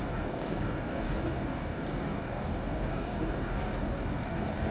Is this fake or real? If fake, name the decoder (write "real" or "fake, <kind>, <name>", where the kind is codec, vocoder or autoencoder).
fake, codec, DAC